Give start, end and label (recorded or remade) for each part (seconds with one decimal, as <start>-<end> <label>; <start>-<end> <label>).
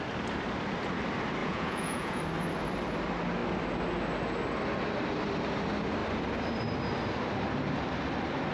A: 0.0-1.4 recorded; 1.4-2.2 remade; 2.2-8.5 recorded